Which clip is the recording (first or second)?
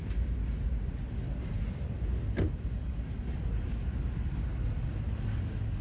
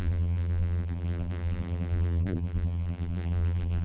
first